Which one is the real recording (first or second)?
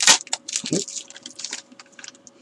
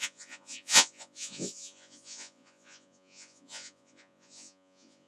first